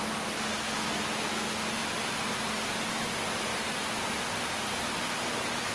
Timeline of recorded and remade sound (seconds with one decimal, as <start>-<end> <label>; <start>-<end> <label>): 0.0-1.8 recorded; 1.8-2.3 remade; 2.3-3.5 recorded; 3.5-4.8 remade; 4.8-5.7 recorded